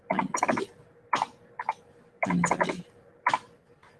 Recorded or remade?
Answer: recorded